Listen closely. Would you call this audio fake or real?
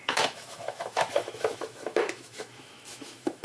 fake